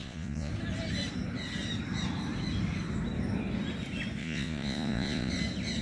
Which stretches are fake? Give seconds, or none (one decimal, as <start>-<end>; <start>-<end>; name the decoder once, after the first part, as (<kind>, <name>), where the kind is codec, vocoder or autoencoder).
0.0-0.5 (vocoder, Vocos); 4.2-5.3